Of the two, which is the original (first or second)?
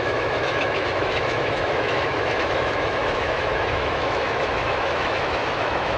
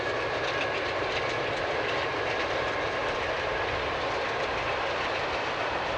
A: second